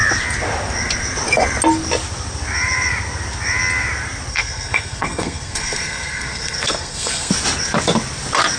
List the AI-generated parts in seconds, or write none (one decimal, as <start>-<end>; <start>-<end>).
4.3-7.3

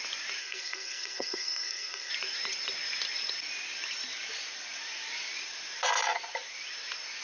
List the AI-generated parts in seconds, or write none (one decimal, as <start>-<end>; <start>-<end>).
0.4-2.1

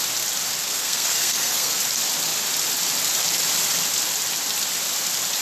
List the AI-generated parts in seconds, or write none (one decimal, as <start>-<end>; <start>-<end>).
0.7-1.8